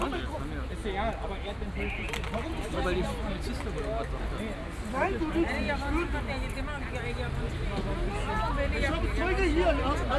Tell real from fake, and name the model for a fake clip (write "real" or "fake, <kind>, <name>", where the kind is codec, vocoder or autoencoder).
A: real